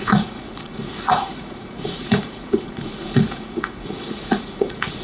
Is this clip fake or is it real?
fake